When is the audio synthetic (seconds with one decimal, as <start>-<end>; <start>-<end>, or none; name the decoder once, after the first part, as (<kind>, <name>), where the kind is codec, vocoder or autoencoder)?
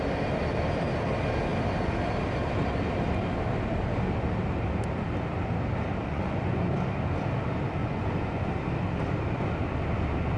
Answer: 6.0-6.7 (vocoder, Vocos); 7.8-8.5